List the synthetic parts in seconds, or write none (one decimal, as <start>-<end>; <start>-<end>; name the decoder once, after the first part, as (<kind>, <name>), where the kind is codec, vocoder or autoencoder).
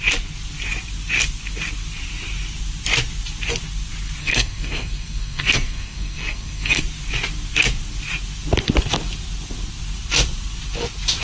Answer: 4.2-6.8 (codec, SNAC)